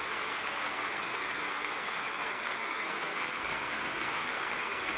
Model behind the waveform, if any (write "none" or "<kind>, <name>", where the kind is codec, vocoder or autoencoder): codec, SNAC